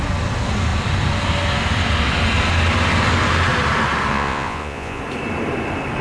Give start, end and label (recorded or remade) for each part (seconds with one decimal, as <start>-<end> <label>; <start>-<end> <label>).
0.0-4.1 recorded; 4.1-5.0 remade; 5.0-6.0 recorded